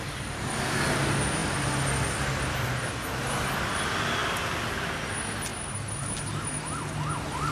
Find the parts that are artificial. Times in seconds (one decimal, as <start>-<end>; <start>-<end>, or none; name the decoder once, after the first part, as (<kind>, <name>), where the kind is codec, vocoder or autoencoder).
none